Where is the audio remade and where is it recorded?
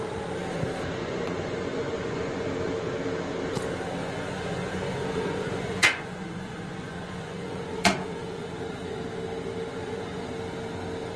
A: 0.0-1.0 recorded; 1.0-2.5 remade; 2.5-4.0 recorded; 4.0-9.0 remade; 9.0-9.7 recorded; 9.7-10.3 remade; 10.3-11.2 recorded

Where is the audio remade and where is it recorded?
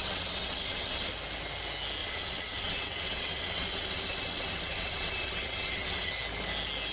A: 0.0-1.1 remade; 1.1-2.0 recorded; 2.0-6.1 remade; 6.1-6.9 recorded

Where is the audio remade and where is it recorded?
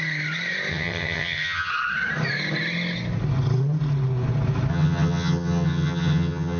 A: 0.0-0.7 recorded; 0.7-1.7 remade; 1.7-4.7 recorded; 4.7-6.6 remade